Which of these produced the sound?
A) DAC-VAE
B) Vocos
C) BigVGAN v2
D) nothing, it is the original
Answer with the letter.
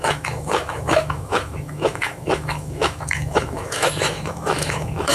A